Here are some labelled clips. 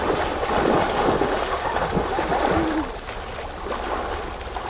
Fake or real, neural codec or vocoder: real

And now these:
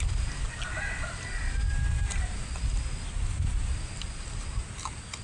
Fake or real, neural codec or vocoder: real